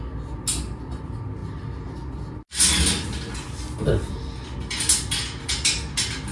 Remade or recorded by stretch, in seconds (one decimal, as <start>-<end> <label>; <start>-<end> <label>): 0.0-6.3 recorded

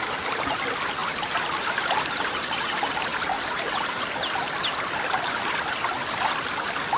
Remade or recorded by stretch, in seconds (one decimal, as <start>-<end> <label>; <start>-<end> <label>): 0.0-7.0 recorded

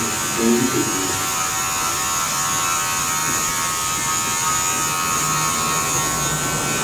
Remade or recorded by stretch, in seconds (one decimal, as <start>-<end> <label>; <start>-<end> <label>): 0.0-3.2 recorded; 3.2-3.9 remade; 3.9-6.8 recorded

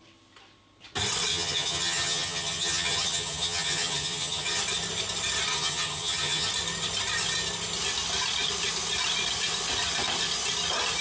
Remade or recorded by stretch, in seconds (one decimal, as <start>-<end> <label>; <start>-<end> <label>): 0.0-1.3 recorded; 1.3-4.6 remade; 4.6-5.5 recorded; 5.5-6.5 remade; 6.5-11.0 recorded